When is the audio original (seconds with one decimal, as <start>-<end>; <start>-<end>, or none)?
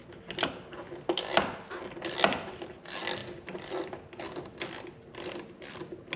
0.0-6.2